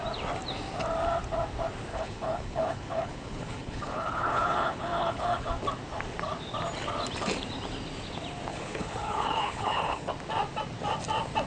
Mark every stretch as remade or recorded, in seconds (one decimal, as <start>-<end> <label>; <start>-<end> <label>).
0.0-1.9 recorded; 1.9-5.5 remade; 5.5-8.5 recorded; 8.5-10.1 remade; 10.1-11.5 recorded